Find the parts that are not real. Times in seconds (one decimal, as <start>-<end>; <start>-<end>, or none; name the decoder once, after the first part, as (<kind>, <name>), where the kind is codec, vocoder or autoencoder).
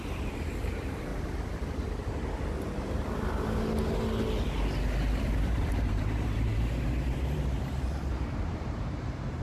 0.0-1.1 (vocoder, BigVGAN v2); 5.3-9.4